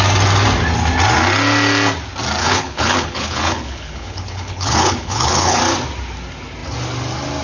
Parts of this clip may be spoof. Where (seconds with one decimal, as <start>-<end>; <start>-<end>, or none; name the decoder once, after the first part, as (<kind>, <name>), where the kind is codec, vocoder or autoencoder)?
2.4-5.6 (codec, HILCodec)